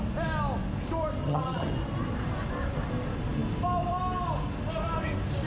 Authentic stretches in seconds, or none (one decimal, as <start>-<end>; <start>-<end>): 0.0-1.2; 1.7-5.5

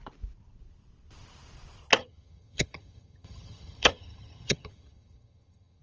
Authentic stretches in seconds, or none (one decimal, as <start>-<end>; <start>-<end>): 0.0-2.0

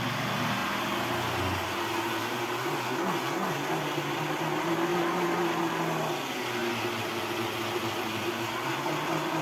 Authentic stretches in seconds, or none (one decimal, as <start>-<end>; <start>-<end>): 0.0-9.4

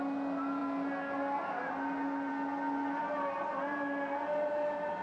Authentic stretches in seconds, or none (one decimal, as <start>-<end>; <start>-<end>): 0.0-5.0

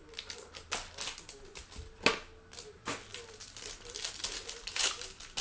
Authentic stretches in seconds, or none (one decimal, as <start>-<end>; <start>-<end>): 0.0-5.4

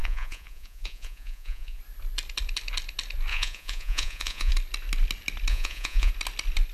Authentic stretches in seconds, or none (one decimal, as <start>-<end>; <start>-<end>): 1.8-3.3; 4.5-5.5; 6.1-6.7

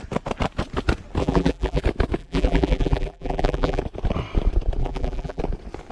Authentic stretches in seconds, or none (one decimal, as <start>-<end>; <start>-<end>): 0.0-1.2; 1.8-2.2; 3.8-4.8; 5.4-5.9